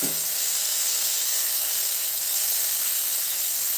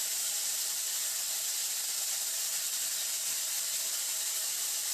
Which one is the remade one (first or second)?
first